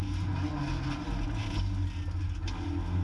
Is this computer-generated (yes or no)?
no